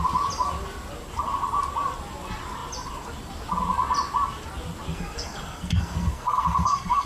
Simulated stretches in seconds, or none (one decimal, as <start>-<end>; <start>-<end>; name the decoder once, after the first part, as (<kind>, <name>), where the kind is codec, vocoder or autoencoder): 4.9-7.1 (codec, SNAC)